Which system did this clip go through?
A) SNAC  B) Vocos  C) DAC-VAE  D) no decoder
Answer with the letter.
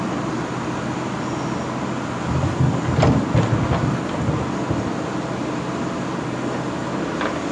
D